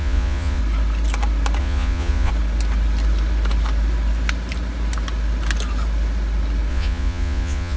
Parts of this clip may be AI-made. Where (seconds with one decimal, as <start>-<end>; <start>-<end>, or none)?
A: 0.0-0.6; 1.6-2.3; 6.7-7.8